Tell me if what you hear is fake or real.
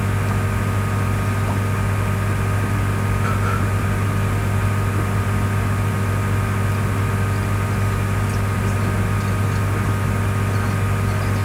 real